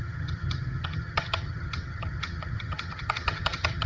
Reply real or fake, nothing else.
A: fake